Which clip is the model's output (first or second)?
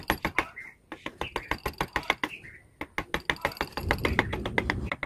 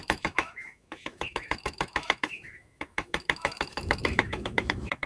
second